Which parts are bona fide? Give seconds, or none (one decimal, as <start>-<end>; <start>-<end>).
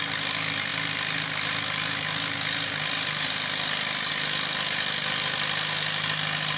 0.0-6.6